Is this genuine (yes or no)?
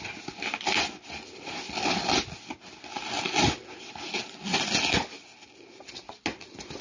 yes